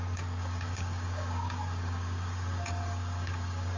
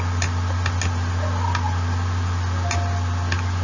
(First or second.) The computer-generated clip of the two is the first